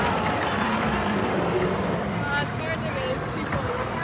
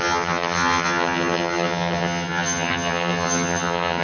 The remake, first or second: second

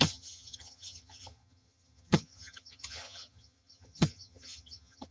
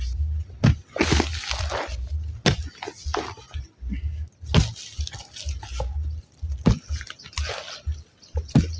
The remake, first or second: first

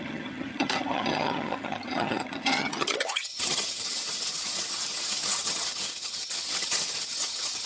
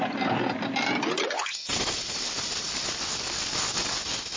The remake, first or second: first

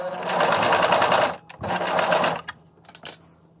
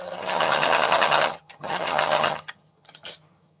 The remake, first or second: second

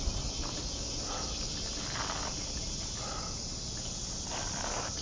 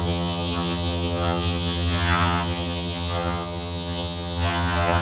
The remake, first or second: second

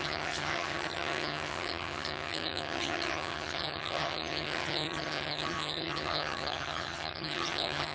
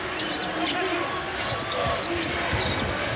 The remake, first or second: first